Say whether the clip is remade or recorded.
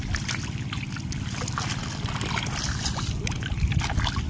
recorded